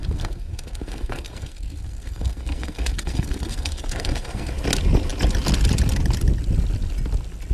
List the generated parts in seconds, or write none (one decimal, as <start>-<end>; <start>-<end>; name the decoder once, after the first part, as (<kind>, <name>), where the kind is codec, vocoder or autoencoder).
0.0-4.5 (codec, SNAC)